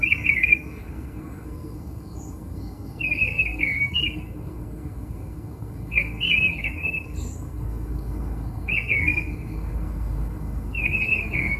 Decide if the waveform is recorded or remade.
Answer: remade